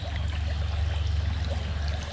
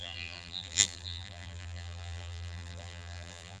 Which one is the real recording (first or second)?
first